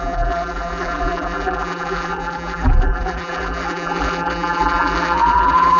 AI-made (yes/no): yes